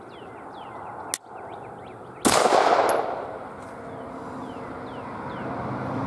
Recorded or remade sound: recorded